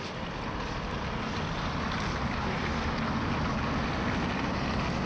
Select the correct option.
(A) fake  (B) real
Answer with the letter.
B